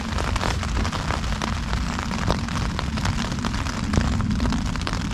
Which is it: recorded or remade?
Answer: recorded